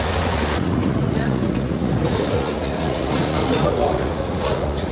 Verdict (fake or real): fake